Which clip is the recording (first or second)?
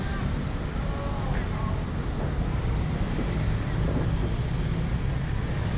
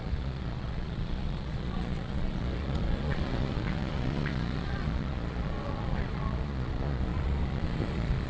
first